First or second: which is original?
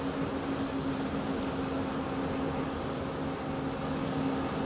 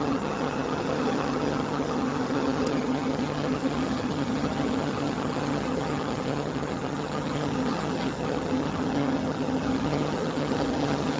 first